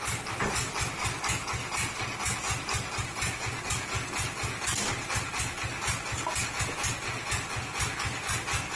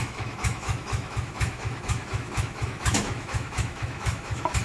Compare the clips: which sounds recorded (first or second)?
first